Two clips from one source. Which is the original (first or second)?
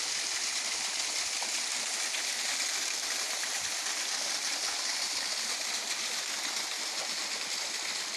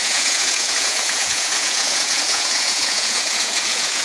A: first